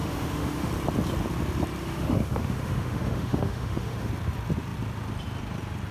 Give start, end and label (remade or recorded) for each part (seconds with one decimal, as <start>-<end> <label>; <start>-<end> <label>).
0.0-0.7 remade; 0.7-1.8 recorded; 1.8-4.1 remade; 4.1-5.9 recorded